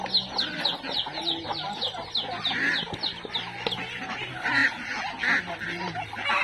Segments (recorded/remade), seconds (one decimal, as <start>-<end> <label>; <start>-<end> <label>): 0.0-6.4 recorded